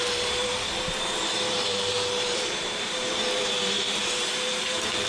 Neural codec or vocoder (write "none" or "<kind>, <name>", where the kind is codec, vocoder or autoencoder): vocoder, BigVGAN v2